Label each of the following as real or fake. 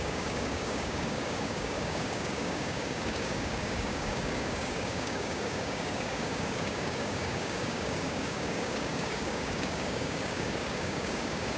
fake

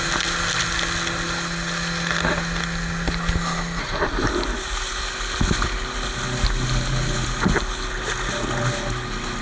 real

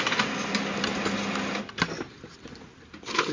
real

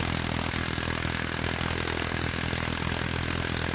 real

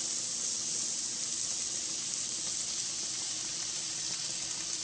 real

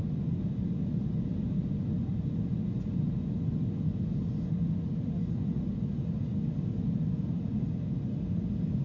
real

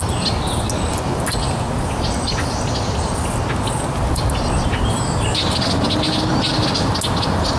real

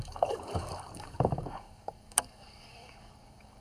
fake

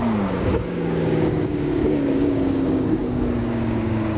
fake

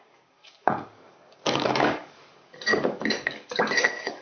fake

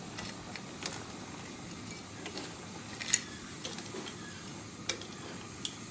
real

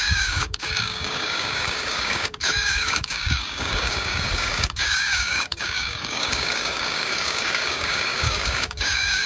fake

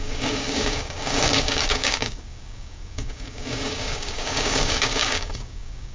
fake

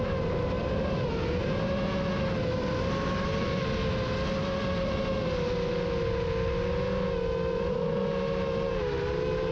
real